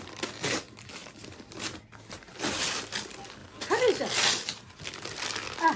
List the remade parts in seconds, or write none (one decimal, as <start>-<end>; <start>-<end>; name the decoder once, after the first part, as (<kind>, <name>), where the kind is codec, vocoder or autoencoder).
none